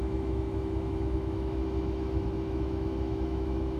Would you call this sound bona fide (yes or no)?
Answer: no